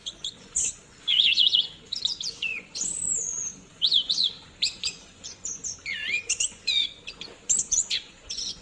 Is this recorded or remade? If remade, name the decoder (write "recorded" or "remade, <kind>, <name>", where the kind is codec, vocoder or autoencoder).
remade, vocoder, Vocos